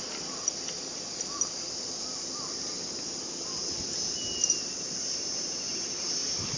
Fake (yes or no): no